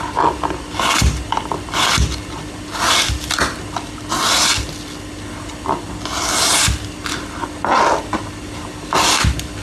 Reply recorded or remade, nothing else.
recorded